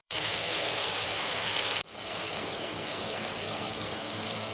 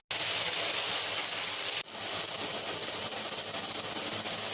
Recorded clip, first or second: second